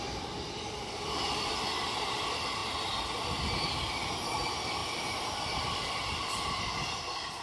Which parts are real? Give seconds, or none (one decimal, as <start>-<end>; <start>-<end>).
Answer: 0.0-2.6; 4.1-4.8; 7.0-7.4